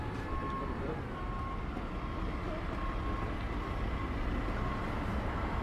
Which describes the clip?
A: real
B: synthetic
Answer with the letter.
A